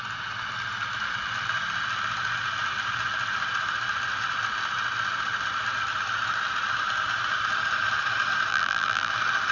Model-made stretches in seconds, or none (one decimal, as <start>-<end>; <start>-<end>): 8.5-9.1